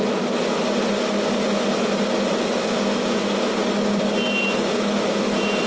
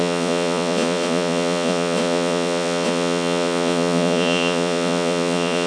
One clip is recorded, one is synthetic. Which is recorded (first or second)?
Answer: first